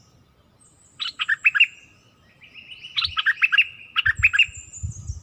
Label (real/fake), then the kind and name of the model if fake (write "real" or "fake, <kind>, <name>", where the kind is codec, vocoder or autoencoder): real